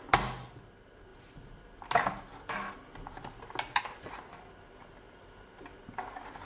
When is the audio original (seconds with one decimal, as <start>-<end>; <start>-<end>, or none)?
0.0-6.5